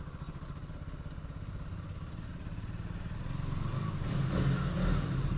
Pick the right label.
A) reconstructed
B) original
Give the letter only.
B